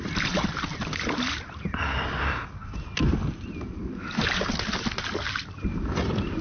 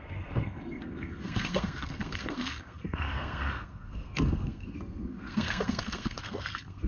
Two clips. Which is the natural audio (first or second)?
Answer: first